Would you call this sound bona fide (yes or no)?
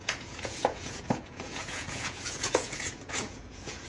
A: no